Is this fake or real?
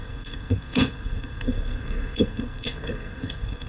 fake